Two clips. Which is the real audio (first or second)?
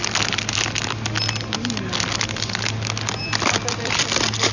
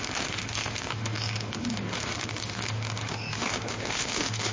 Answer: first